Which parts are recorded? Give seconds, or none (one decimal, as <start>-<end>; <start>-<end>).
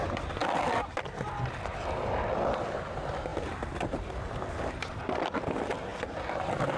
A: 0.0-6.8